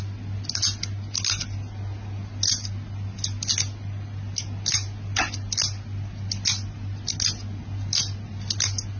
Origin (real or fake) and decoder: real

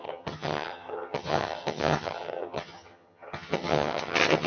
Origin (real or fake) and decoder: fake, vocoder, HiFi-GAN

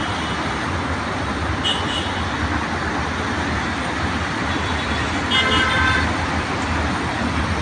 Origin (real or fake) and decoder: real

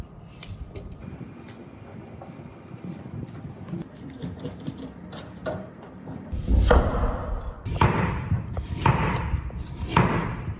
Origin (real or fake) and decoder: fake, vocoder, BigVGAN v2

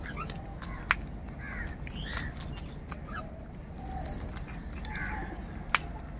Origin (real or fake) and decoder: real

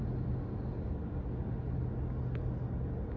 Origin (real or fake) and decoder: real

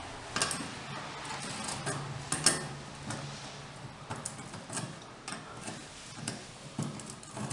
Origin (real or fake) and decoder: real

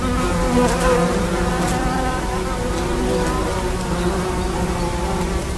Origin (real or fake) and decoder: real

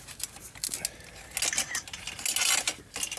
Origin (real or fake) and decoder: real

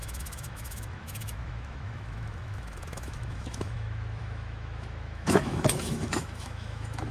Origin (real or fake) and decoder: fake, autoencoder, DAC-VAE